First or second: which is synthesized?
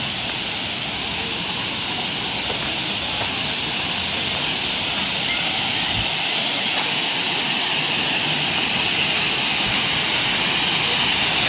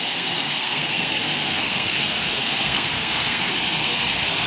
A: second